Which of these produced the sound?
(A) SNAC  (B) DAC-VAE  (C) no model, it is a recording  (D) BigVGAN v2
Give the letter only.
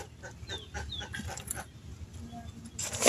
C